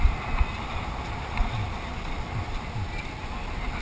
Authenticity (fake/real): real